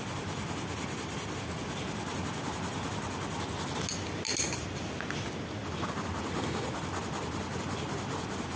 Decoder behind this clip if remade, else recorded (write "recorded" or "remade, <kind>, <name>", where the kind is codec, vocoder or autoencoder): recorded